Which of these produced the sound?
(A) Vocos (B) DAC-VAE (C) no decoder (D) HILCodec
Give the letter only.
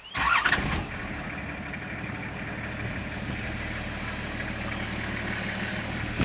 C